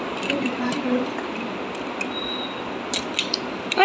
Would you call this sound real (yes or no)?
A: yes